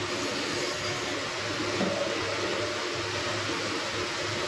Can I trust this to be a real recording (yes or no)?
yes